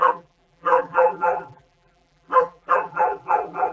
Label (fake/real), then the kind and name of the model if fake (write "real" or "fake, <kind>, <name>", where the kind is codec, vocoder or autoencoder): fake, vocoder, BigVGAN v2